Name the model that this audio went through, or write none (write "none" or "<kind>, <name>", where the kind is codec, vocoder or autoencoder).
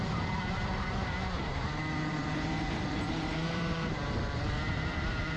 vocoder, BigVGAN v2